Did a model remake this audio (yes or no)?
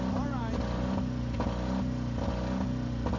no